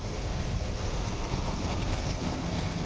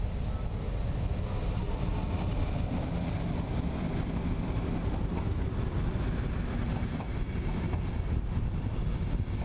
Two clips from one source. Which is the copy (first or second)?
first